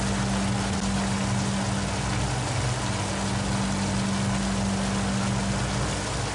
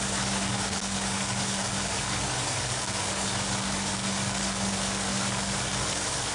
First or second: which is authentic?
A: first